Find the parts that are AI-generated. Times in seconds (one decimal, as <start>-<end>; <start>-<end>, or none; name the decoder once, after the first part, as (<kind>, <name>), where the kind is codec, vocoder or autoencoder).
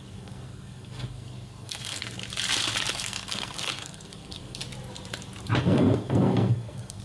0.0-2.2 (codec, SNAC); 2.9-4.6; 5.6-7.0